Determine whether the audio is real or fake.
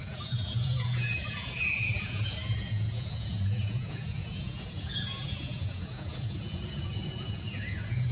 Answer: fake